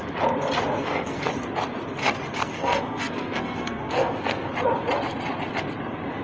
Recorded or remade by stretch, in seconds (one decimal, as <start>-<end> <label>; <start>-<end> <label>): 0.0-0.8 recorded; 0.8-1.3 remade; 1.3-2.4 recorded; 2.4-4.5 remade; 4.5-6.2 recorded